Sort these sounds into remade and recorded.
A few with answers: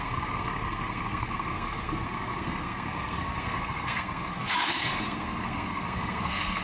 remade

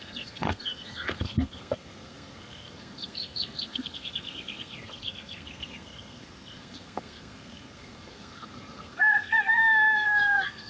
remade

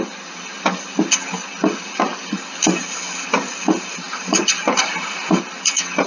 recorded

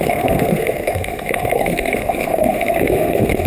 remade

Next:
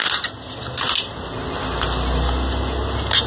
recorded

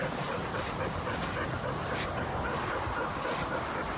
recorded